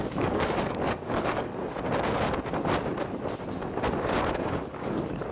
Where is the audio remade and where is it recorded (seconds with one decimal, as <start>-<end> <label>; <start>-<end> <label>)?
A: 0.0-1.5 remade; 1.5-4.4 recorded; 4.4-5.3 remade